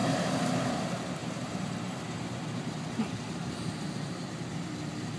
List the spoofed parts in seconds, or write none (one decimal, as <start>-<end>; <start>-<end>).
1.2-4.3